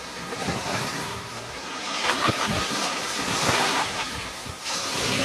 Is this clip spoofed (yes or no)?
yes